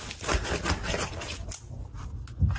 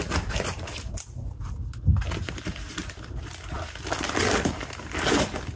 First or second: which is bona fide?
first